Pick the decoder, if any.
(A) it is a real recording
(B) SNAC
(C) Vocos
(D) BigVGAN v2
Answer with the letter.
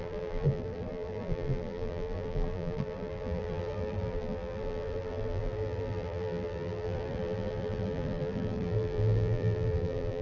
D